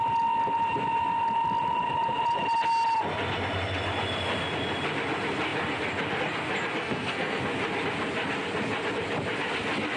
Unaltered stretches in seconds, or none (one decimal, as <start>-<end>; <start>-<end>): 0.0-6.8; 7.4-10.0